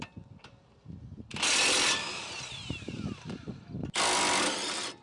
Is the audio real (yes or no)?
no